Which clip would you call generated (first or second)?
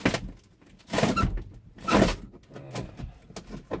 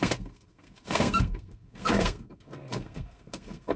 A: second